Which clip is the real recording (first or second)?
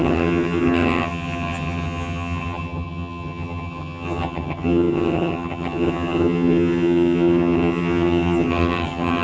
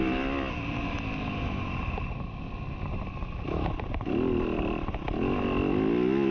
second